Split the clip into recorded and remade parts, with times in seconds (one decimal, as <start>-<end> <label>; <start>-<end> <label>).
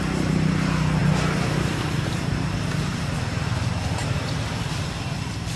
0.0-1.0 recorded; 1.0-2.4 remade; 2.4-4.0 recorded; 4.0-4.7 remade; 4.7-5.6 recorded